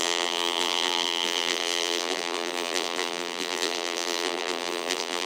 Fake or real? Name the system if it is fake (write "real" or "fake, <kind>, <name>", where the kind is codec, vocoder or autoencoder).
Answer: fake, vocoder, BigVGAN v2